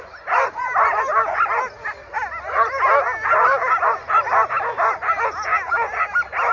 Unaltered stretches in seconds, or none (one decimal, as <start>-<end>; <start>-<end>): 0.0-6.5